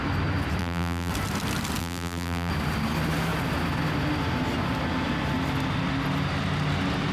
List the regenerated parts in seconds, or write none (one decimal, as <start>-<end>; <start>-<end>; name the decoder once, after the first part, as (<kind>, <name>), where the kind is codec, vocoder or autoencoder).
0.6-1.1 (vocoder, BigVGAN v2); 1.8-2.5